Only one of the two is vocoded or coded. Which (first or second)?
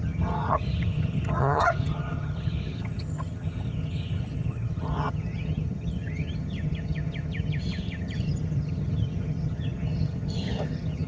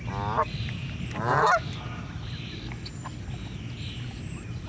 first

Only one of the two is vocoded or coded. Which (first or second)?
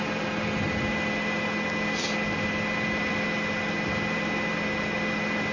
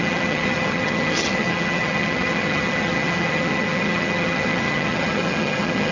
second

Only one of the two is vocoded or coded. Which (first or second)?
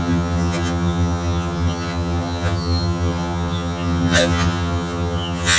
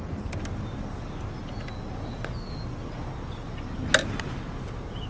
first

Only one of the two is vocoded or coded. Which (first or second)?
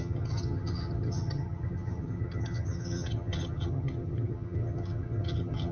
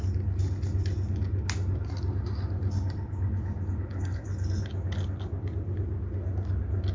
first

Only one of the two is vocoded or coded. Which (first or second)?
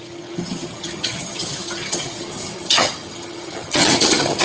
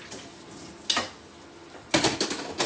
first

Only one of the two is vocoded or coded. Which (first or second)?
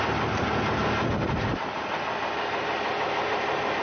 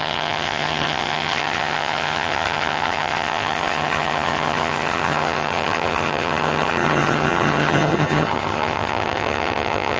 second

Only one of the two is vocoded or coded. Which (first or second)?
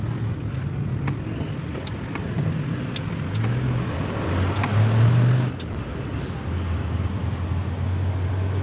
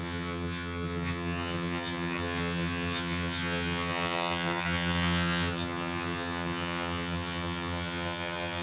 second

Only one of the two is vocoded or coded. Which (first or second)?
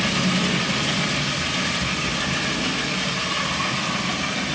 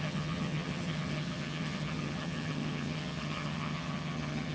second